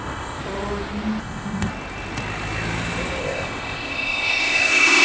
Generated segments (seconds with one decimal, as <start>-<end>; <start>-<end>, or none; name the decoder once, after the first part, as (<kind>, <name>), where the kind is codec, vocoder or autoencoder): 0.0-0.4 (codec, ZipCodec); 1.2-1.7; 3.2-5.0